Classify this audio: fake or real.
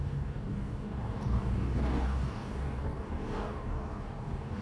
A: fake